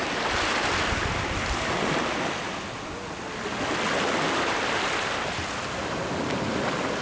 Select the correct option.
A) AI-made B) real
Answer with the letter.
B